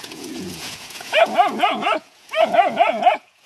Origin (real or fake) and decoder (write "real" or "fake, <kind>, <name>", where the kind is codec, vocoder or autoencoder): fake, vocoder, Vocos